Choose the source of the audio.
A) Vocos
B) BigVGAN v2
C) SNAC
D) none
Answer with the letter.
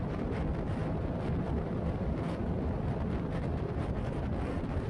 B